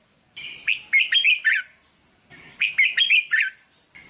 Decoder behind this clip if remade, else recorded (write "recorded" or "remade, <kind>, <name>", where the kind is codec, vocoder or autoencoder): recorded